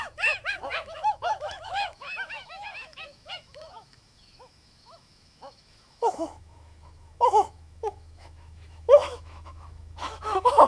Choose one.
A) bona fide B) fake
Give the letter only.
B